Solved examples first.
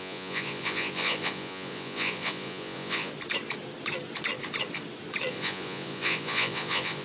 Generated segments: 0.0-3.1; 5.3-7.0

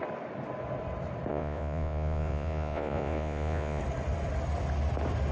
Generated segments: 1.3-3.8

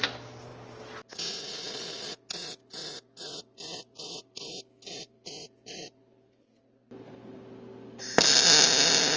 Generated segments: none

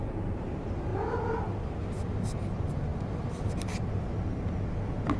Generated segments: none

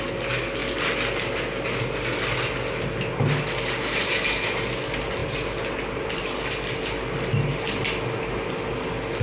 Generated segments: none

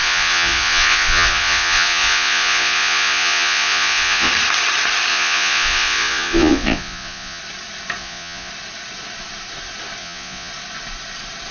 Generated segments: 0.0-4.3; 5.1-7.4; 8.0-8.5; 10.0-10.5

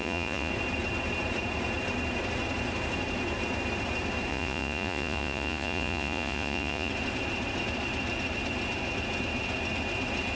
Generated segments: 0.0-0.5; 4.3-6.9

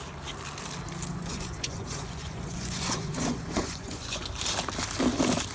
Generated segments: 1.1-4.3